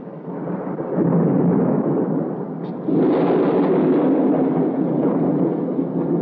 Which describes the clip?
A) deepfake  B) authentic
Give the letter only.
B